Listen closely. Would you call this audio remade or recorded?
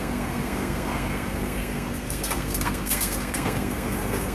remade